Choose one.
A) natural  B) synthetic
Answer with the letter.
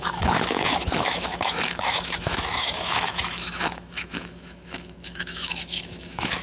B